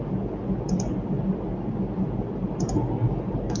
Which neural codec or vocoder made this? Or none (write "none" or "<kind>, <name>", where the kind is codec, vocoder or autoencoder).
none